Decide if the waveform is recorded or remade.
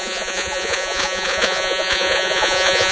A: remade